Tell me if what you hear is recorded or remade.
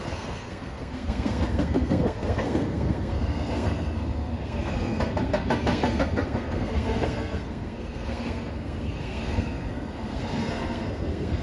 remade